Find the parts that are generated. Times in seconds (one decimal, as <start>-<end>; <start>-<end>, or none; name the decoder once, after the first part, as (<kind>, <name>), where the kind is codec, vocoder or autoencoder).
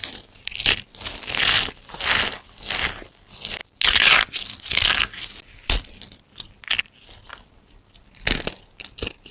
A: none